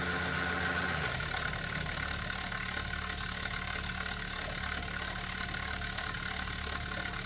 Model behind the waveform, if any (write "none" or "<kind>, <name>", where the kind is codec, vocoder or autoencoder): none